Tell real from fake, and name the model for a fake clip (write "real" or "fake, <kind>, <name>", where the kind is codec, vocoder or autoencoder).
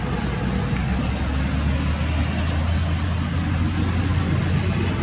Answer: real